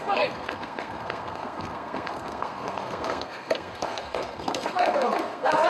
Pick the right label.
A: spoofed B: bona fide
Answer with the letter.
A